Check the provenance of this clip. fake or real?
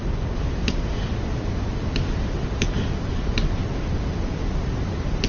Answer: real